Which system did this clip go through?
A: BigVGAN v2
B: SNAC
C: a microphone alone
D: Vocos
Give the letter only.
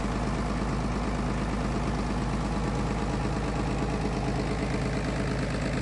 C